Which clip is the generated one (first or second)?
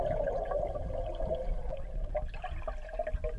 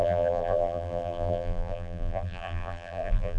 second